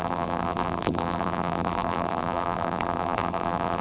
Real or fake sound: fake